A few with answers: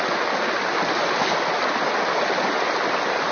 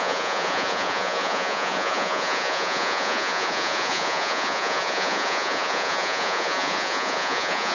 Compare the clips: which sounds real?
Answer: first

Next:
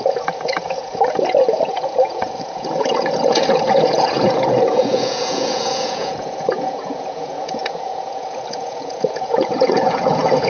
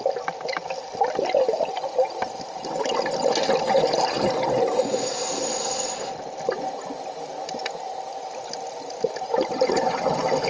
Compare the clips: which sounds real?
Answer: second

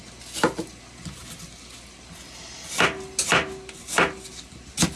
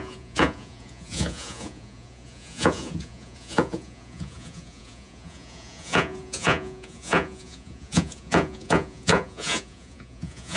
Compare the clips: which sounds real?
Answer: first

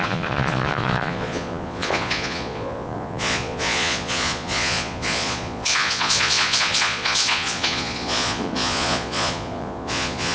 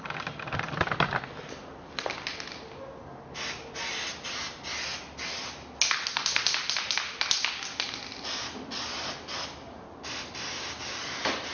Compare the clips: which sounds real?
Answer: second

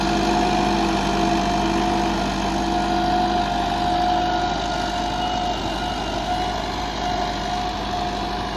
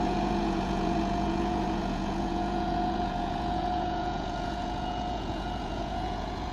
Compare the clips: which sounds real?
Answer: first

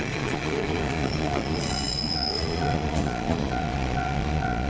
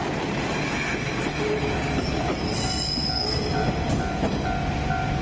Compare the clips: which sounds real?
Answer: second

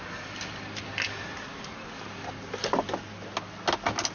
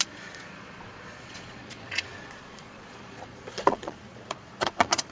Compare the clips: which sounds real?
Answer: first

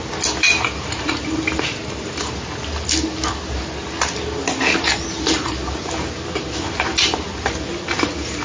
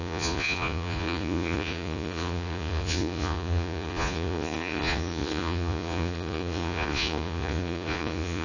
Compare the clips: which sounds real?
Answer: first